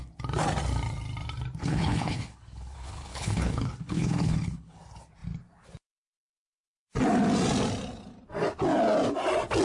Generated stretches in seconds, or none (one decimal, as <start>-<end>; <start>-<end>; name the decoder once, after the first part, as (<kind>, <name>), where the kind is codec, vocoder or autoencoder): 1.6-4.8 (codec, HILCodec)